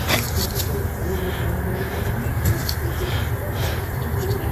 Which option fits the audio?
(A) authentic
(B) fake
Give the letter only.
A